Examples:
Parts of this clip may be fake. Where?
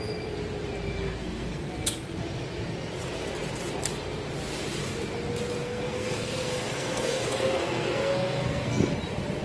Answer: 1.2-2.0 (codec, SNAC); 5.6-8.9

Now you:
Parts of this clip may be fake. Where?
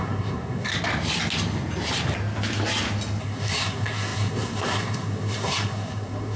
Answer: 0.0-0.7 (codec, SNAC); 3.2-6.4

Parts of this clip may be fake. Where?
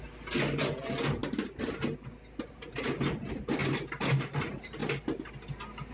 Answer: none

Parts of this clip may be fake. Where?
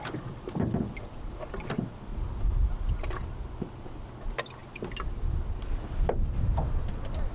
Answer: none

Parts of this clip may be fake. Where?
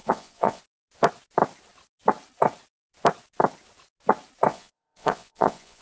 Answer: 0.0-0.6 (vocoder, Vocos); 4.5-5.8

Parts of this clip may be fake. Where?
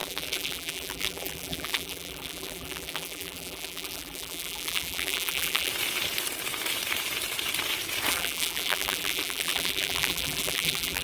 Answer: 0.0-5.7 (vocoder, BigVGAN v2); 8.1-11.0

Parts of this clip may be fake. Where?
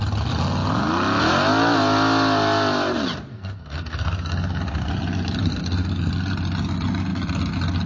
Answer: 3.3-4.9 (codec, SNAC); 5.4-6.1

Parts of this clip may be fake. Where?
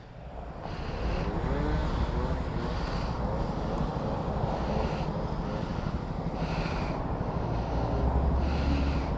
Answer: none